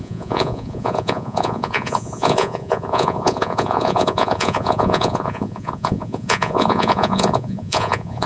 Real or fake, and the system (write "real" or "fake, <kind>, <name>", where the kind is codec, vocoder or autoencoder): fake, vocoder, Vocos